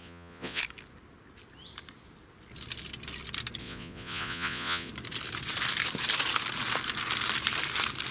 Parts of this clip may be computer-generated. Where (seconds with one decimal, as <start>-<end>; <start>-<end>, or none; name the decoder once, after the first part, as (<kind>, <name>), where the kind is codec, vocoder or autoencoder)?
0.0-0.6 (vocoder, Vocos); 3.6-4.9